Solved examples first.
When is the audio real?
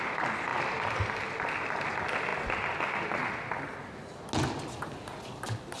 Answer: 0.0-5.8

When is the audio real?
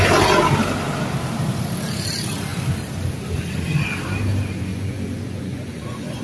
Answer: 0.0-4.7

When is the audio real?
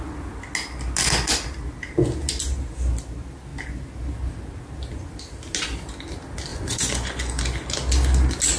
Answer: 0.0-6.5; 7.4-8.6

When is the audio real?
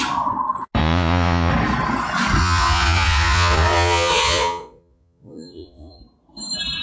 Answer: 0.0-0.8; 1.5-2.4; 6.0-6.8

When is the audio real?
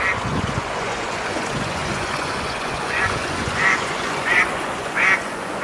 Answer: none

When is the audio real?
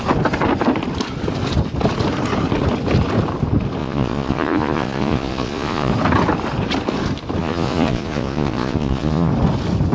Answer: 0.0-3.8; 5.9-7.4; 9.3-9.9